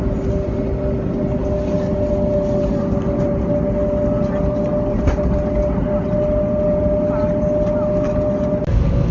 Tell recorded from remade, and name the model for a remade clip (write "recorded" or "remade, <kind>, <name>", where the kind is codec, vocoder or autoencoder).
recorded